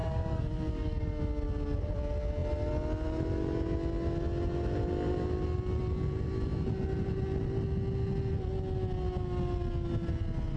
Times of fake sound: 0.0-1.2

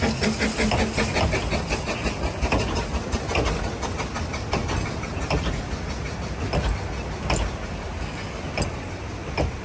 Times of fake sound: none

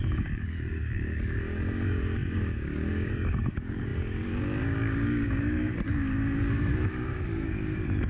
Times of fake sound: 0.0-8.1

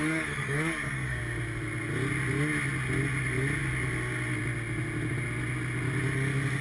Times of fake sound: 0.0-1.2